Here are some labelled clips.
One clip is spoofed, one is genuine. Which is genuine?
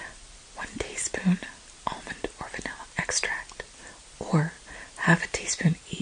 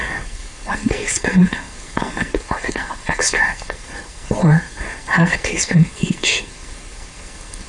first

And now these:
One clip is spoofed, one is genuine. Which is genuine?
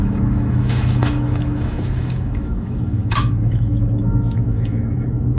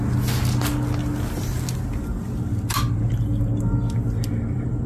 second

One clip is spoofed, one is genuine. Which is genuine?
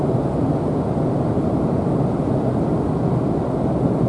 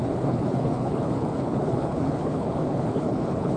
first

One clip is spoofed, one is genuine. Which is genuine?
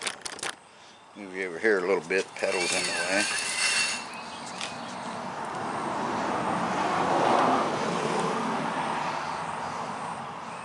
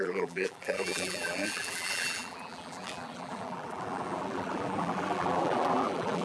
first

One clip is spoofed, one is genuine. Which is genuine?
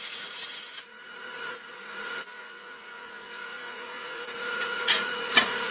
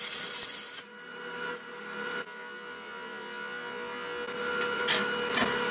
second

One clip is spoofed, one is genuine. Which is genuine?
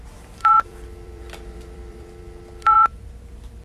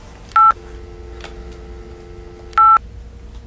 second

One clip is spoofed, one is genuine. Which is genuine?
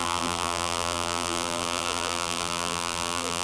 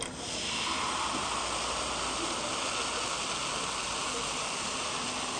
second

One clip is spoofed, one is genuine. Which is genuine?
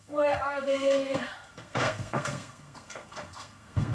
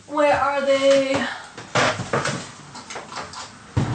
second